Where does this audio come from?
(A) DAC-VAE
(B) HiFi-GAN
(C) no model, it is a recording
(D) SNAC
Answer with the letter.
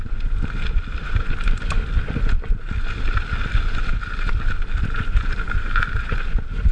C